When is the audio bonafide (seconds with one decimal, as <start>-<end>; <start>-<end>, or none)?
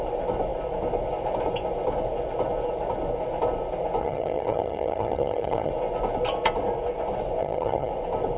0.0-4.0; 5.7-7.4; 7.9-8.4